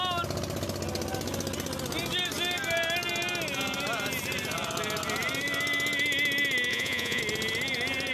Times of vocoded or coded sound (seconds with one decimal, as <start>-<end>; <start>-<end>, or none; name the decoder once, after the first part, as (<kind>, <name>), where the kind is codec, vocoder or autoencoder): 6.7-7.2 (vocoder, Vocos)